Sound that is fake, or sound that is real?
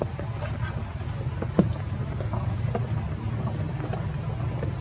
real